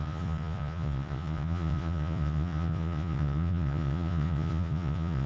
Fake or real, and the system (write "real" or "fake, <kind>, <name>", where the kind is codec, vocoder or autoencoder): fake, vocoder, Vocos